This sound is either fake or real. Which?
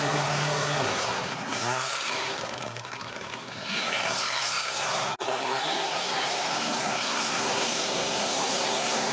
fake